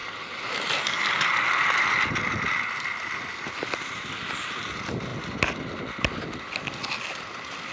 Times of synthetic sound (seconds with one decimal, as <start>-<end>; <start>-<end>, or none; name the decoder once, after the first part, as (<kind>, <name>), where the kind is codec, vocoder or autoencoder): 0.0-0.9 (vocoder, BigVGAN v2)